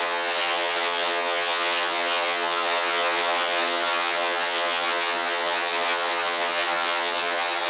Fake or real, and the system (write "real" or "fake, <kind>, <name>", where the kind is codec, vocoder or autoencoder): fake, vocoder, HiFi-GAN